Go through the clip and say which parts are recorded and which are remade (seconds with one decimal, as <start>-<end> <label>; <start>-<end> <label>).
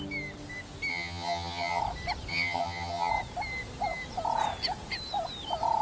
0.0-0.9 recorded; 0.9-1.8 remade; 1.8-2.3 recorded; 2.3-3.1 remade; 3.1-5.8 recorded